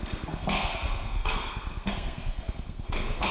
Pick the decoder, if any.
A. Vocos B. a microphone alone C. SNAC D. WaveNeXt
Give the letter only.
C